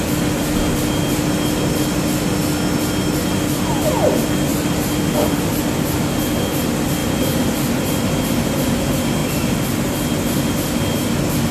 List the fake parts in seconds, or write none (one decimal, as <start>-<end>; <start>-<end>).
4.5-5.6; 7.0-7.7; 9.2-10.5